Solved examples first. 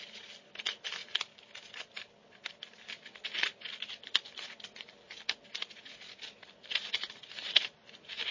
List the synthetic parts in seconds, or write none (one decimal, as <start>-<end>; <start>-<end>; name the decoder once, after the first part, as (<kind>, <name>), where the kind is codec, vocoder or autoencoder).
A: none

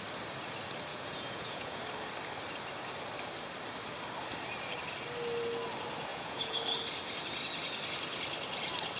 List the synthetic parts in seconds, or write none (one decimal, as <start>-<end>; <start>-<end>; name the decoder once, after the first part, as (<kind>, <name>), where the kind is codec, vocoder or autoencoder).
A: 0.9-1.8 (vocoder, Vocos); 6.1-6.6

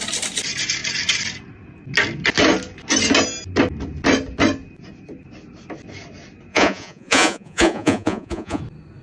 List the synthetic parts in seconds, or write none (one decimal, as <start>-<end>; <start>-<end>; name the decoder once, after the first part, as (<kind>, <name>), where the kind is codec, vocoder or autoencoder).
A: 6.5-8.6 (vocoder, Vocos)